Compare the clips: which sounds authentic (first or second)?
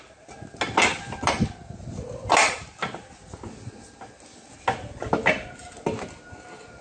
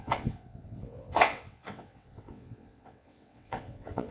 first